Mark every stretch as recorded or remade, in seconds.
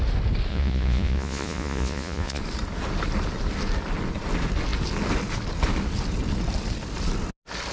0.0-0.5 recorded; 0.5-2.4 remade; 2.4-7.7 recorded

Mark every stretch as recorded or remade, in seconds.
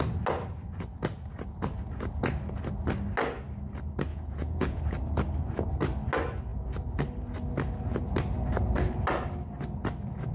0.0-4.1 recorded; 4.1-4.8 remade; 4.8-10.3 recorded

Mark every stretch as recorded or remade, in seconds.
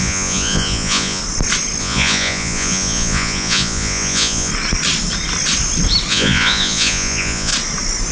0.0-1.2 remade; 1.2-1.8 recorded; 1.8-4.5 remade; 4.5-6.1 recorded; 6.1-7.5 remade; 7.5-8.1 recorded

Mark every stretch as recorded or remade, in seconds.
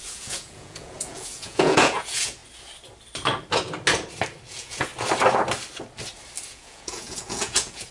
0.0-2.4 remade; 2.4-4.5 recorded; 4.5-4.9 remade; 4.9-6.5 recorded; 6.5-7.9 remade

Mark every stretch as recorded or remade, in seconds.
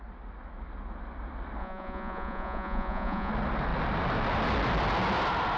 0.0-1.6 recorded; 1.6-3.3 remade; 3.3-5.6 recorded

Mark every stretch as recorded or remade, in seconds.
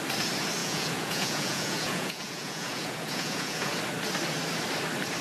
0.0-0.6 recorded; 0.6-3.7 remade; 3.7-5.2 recorded